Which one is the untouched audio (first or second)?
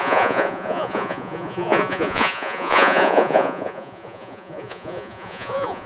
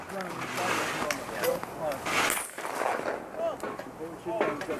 second